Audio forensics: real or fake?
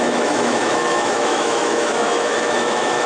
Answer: fake